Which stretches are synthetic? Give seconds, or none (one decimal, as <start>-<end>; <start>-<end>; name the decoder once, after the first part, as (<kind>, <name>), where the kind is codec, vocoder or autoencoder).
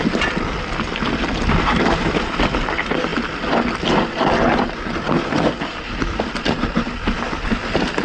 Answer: none